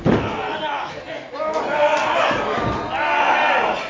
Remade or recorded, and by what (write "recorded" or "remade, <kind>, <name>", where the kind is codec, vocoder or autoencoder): recorded